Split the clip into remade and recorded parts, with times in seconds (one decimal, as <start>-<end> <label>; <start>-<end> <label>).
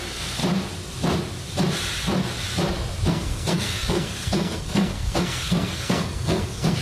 0.0-0.4 remade; 0.4-3.1 recorded; 3.1-6.8 remade